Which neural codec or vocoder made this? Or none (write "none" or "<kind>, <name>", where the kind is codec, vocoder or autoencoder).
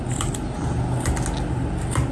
none